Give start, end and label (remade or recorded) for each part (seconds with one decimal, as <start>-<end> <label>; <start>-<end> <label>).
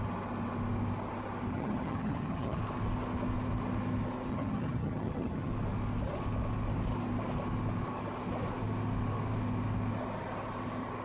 0.0-1.5 recorded; 1.5-2.6 remade; 2.6-4.3 recorded; 4.3-5.5 remade; 5.5-11.0 recorded